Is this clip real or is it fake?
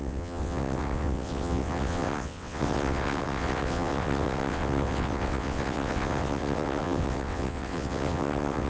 fake